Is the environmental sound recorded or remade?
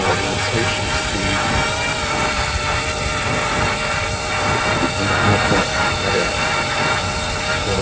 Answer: recorded